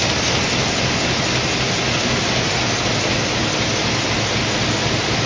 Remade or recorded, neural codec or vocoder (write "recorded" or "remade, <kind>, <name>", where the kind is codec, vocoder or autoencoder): recorded